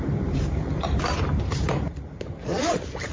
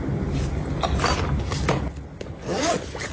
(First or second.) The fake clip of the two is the first